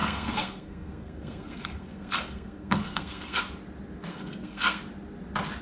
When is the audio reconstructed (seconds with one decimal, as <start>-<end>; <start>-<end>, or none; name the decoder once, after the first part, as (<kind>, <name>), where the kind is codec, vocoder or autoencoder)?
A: 0.0-3.4 (codec, SNAC); 4.1-4.8